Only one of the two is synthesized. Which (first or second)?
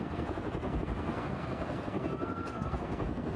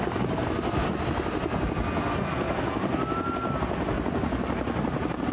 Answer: first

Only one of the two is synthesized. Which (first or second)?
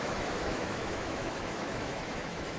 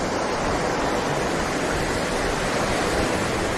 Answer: first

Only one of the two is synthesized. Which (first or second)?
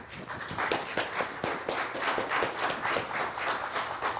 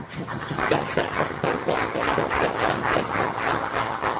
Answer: second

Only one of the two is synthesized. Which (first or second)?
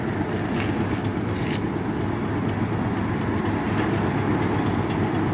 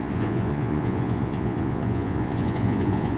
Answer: second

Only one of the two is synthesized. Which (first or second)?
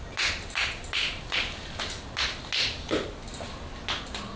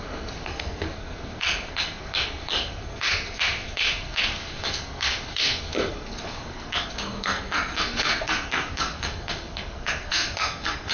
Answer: second